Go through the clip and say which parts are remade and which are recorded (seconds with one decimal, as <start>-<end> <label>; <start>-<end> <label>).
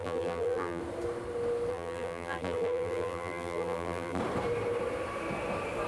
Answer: 0.0-0.8 remade; 0.8-1.7 recorded; 1.7-4.2 remade; 4.2-5.9 recorded